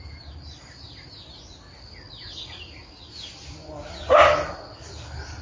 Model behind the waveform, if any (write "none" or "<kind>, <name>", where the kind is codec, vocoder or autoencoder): none